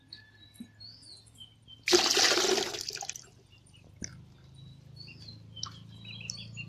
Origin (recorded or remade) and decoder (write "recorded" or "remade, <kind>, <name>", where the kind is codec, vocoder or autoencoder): recorded